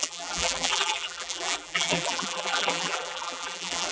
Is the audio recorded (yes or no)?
no